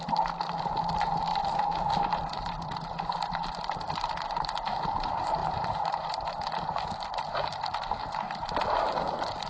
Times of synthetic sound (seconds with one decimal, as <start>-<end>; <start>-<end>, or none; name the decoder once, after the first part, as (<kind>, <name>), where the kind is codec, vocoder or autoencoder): 1.3-3.5 (vocoder, BigVGAN v2); 5.4-6.3